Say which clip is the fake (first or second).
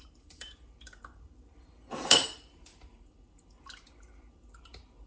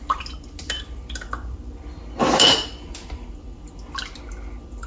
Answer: first